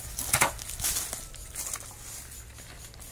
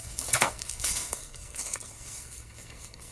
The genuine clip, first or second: first